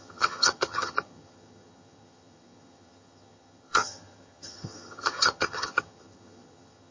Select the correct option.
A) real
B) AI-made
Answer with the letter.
B